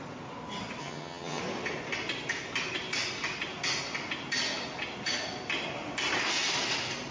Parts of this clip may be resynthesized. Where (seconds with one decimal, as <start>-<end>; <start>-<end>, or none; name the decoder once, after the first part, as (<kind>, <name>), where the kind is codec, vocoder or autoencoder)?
0.8-1.4 (vocoder, HiFi-GAN)